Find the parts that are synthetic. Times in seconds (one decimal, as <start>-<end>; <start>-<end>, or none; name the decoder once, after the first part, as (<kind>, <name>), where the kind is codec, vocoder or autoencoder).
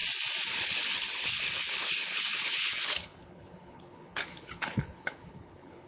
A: 0.5-5.9 (codec, HILCodec)